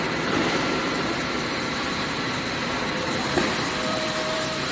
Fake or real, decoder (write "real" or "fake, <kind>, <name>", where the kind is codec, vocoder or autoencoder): fake, vocoder, BigVGAN v2